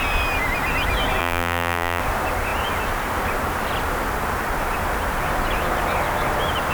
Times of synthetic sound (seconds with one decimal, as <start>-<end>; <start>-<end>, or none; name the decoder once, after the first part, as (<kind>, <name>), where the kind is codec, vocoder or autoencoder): 1.2-2.0 (vocoder, BigVGAN v2)